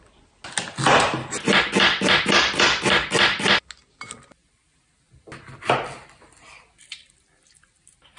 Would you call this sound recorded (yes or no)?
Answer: yes